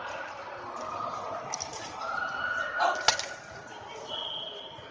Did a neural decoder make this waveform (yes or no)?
no